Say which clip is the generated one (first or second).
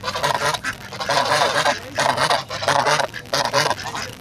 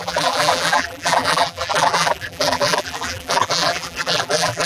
second